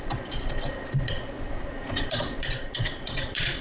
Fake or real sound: fake